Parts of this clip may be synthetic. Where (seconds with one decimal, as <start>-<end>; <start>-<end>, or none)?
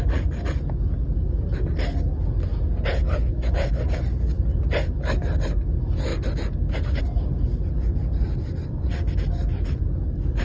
2.5-3.7